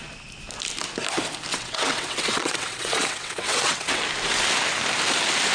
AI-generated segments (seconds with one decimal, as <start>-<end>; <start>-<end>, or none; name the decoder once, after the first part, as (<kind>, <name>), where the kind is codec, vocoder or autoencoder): 1.5-4.0 (vocoder, WaveNeXt)